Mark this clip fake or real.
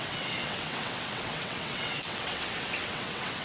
fake